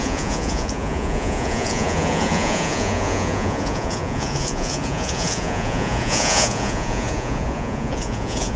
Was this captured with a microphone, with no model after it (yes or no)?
no